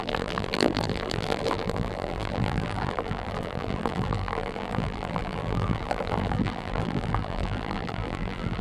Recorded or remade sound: remade